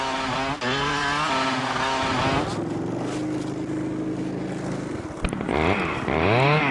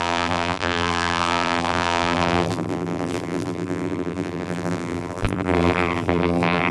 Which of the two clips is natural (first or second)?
first